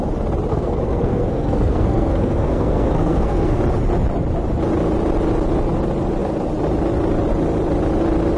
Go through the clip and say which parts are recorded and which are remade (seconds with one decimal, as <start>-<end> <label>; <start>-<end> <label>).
0.0-0.5 recorded; 0.5-3.6 remade; 3.6-8.4 recorded

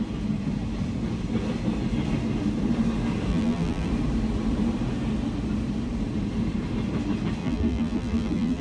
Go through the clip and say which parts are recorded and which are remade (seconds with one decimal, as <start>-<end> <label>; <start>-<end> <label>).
0.0-3.3 recorded; 3.3-3.9 remade; 3.9-7.4 recorded; 7.4-8.6 remade

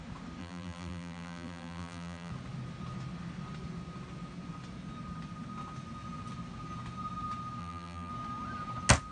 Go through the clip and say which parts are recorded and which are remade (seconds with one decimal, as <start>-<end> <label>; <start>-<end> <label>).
0.0-0.4 recorded; 0.4-2.3 remade; 2.3-7.6 recorded; 7.6-8.1 remade; 8.1-9.1 recorded

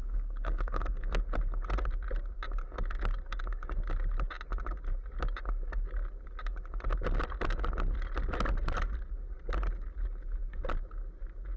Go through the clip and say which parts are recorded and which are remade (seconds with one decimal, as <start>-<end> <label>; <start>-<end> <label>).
0.0-1.2 remade; 1.2-11.6 recorded

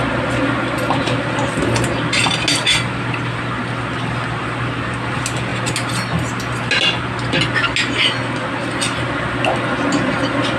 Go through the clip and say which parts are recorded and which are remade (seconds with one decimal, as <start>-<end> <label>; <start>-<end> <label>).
0.0-10.6 recorded

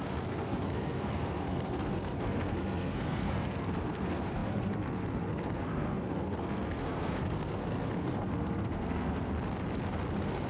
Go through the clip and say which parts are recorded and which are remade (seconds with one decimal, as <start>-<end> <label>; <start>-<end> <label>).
0.0-9.3 remade; 9.3-10.5 recorded

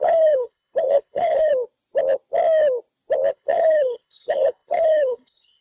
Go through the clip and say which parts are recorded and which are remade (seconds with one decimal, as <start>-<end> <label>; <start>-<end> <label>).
0.0-1.5 remade; 1.5-3.3 recorded; 3.3-5.6 remade